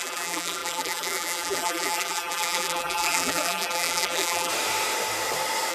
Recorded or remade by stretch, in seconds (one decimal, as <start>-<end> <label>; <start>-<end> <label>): 0.0-4.5 remade; 4.5-5.7 recorded